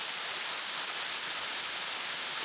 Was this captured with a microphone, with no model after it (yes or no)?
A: yes